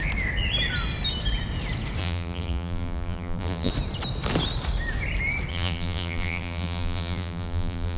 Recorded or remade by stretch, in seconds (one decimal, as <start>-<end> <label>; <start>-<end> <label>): 0.0-2.0 recorded; 2.0-3.7 remade; 3.7-5.5 recorded; 5.5-8.0 remade